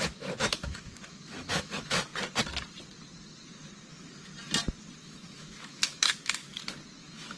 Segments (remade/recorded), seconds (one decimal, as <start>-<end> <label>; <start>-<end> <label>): 0.0-2.1 remade; 2.1-3.9 recorded; 3.9-4.3 remade; 4.3-5.0 recorded; 5.0-6.5 remade; 6.5-7.0 recorded; 7.0-7.4 remade